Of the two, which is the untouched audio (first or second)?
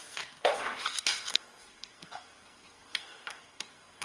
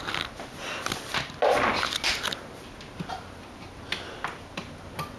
second